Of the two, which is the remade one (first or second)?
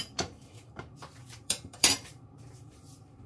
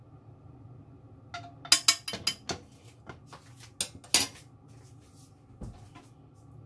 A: first